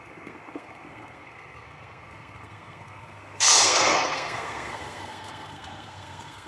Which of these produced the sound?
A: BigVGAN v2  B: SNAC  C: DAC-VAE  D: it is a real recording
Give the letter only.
B